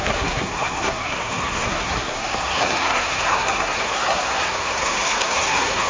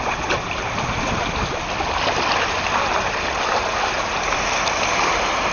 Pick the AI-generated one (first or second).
first